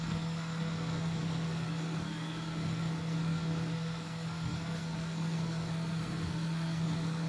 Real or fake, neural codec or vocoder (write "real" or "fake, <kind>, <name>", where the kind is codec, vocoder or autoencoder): fake, codec, SNAC